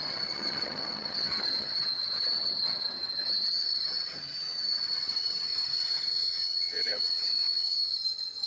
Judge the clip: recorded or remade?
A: remade